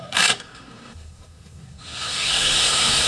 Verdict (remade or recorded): remade